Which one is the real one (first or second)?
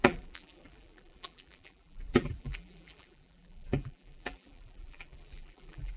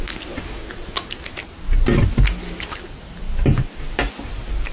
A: second